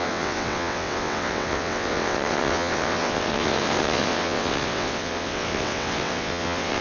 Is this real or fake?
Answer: fake